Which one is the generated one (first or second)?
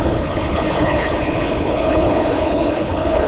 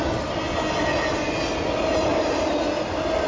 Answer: first